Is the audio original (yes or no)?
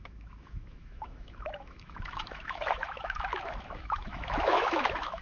no